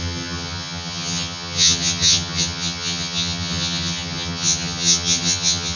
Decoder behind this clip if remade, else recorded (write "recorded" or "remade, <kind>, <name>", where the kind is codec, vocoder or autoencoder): remade, vocoder, HiFi-GAN